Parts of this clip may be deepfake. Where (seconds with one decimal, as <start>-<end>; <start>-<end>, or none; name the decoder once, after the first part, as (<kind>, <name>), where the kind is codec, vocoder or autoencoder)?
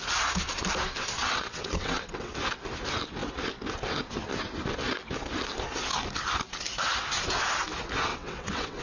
1.2-2.3 (vocoder, WaveNeXt); 8.1-8.8